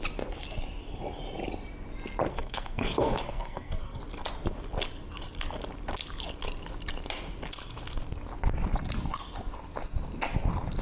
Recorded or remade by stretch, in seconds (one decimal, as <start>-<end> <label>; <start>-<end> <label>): 0.0-2.3 recorded; 2.3-4.0 remade; 4.0-10.8 recorded